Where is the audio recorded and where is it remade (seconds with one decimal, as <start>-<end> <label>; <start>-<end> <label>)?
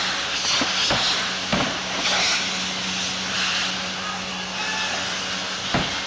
0.0-6.1 recorded